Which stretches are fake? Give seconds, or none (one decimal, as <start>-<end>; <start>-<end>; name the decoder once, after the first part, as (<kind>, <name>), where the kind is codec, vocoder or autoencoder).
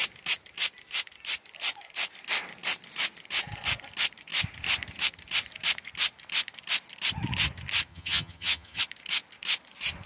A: 7.9-8.8 (vocoder, HiFi-GAN)